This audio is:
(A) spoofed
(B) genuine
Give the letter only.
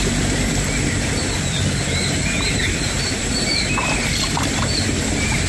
A